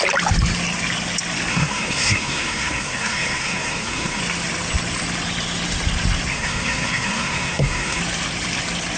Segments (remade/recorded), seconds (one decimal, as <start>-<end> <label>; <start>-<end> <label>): 0.0-1.5 recorded; 1.5-4.2 remade; 4.2-6.3 recorded; 6.3-8.0 remade; 8.0-9.0 recorded